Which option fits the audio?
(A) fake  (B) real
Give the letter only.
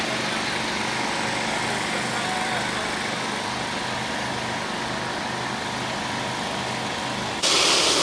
B